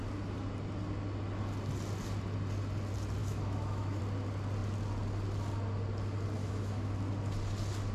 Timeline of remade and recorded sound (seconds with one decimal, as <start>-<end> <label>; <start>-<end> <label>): 0.0-3.2 recorded; 3.2-4.0 remade; 4.0-6.4 recorded; 6.4-6.9 remade; 6.9-7.9 recorded